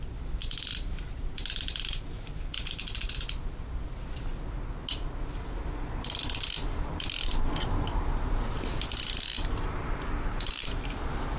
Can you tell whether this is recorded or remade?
recorded